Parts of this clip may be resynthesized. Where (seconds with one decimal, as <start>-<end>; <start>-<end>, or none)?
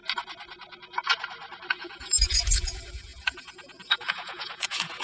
1.7-5.0